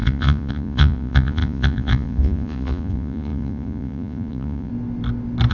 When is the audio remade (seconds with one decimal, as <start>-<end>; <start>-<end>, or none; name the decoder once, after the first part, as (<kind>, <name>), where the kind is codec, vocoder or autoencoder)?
0.0-4.7 (vocoder, Vocos)